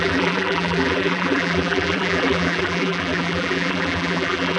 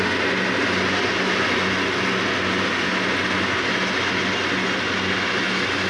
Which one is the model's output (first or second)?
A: first